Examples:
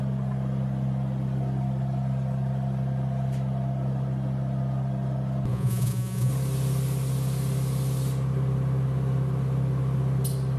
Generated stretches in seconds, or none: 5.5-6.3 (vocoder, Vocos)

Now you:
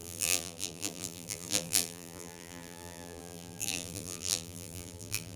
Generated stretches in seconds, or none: 0.0-5.4 (vocoder, BigVGAN v2)

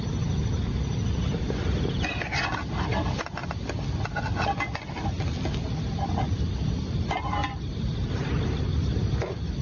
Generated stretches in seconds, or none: none

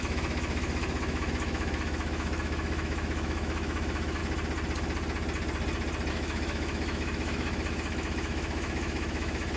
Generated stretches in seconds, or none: 0.0-4.2 (autoencoder, DAC-VAE); 6.1-9.6

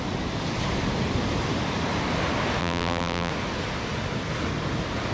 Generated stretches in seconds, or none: 2.6-3.3 (vocoder, BigVGAN v2)

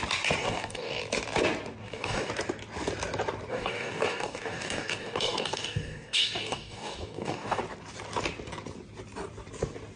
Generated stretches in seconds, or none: 0.4-1.0 (codec, DAC); 1.8-2.3; 3.5-7.6

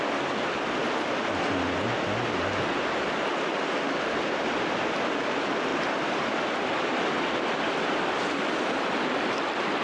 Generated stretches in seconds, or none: 0.0-0.8 (vocoder, BigVGAN v2); 4.2-9.8

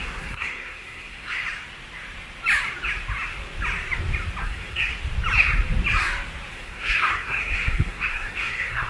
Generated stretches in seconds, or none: 0.0-1.4 (codec, SNAC); 4.4-4.9; 6.5-8.9